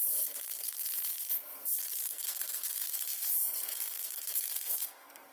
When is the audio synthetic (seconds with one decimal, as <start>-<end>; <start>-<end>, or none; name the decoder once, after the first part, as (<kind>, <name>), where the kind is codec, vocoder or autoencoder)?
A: 0.6-5.3 (codec, SNAC)